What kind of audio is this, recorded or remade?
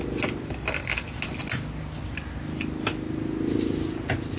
recorded